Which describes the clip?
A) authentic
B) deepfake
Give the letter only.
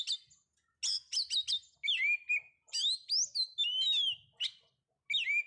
A